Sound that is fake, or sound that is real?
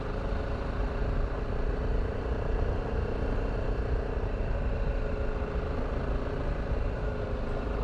real